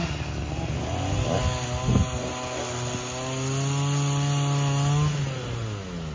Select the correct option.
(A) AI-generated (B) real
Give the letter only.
B